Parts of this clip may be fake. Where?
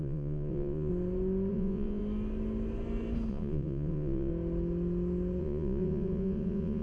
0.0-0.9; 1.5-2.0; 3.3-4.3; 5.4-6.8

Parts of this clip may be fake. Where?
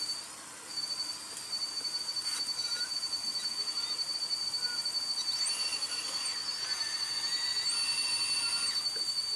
none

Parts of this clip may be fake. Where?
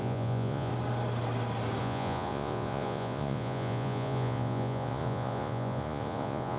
0.0-0.7; 1.8-6.6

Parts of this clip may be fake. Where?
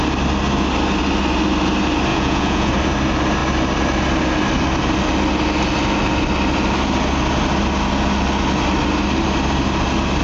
2.1-2.7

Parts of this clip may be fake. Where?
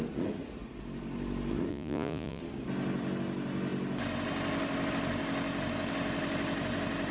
1.7-2.4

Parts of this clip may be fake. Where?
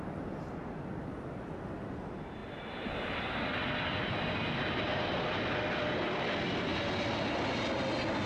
none